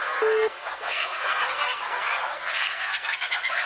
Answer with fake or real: fake